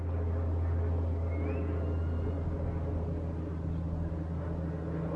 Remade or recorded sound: recorded